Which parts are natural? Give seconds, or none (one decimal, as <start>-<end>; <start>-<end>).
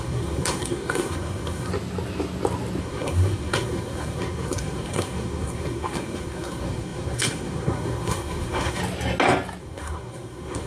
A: 1.7-2.8; 8.8-9.6